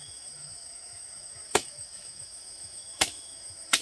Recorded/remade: remade